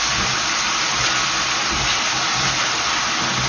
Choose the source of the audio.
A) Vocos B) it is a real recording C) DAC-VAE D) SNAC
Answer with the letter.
B